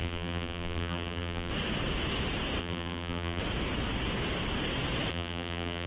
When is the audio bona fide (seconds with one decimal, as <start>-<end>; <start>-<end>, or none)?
1.5-2.6; 3.4-5.1